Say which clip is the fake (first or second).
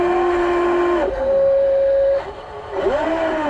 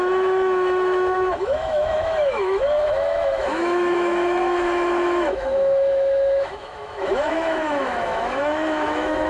second